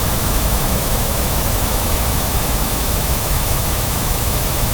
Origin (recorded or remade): remade